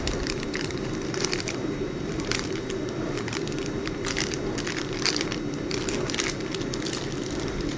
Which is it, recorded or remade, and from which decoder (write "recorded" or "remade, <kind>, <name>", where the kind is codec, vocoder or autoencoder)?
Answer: remade, vocoder, BigVGAN v2